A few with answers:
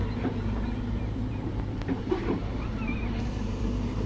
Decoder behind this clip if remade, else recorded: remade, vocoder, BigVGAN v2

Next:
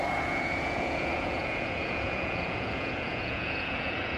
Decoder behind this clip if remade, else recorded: remade, vocoder, Vocos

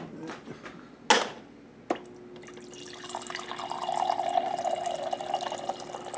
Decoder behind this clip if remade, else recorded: recorded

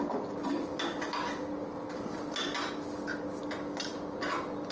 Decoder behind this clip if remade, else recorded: recorded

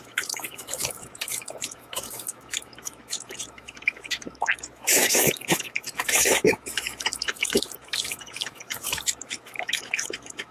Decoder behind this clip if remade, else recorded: remade, autoencoder, DAC-VAE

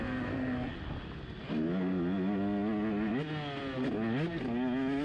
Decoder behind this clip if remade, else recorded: recorded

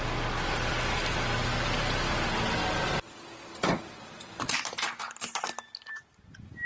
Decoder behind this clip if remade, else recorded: recorded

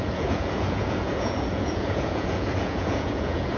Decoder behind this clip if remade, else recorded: remade, vocoder, Vocos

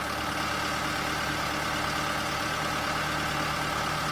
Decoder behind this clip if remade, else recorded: recorded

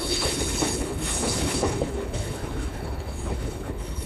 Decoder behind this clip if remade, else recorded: remade, codec, HILCodec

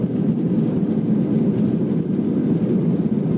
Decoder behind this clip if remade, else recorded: recorded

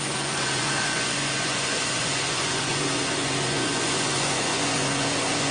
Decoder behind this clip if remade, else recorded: remade, vocoder, Vocos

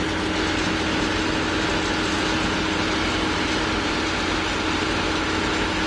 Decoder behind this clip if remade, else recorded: recorded